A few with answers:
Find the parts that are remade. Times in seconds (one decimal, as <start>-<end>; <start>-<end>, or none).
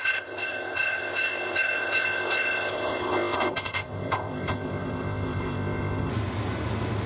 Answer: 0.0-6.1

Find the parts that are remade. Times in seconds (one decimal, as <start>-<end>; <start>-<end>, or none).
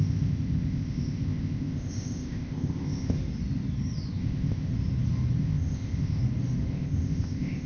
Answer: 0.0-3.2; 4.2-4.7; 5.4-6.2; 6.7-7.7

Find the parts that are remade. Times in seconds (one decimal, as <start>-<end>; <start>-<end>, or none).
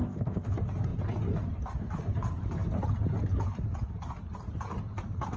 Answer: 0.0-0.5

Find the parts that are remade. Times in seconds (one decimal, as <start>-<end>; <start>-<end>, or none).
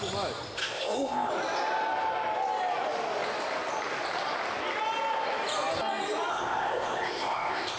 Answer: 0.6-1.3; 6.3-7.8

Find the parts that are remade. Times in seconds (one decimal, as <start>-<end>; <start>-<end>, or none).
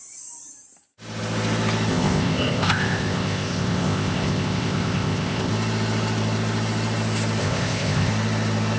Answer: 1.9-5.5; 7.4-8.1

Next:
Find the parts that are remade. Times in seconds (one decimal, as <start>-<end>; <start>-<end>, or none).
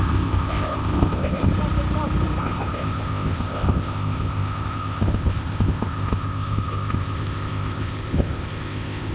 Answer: 0.0-1.5; 2.4-9.1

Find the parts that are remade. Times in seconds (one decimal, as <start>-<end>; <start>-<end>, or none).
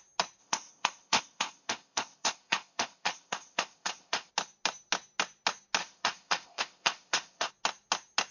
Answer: 0.4-4.3; 5.8-7.5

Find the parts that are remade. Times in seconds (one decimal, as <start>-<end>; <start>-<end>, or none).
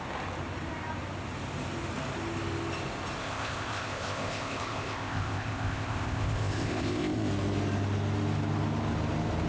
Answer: 3.2-7.3